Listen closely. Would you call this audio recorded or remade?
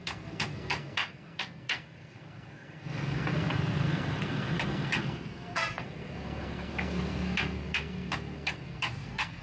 remade